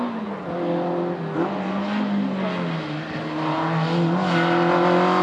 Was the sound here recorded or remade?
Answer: recorded